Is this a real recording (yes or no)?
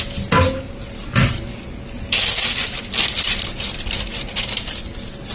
yes